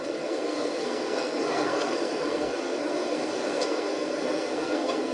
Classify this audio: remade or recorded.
remade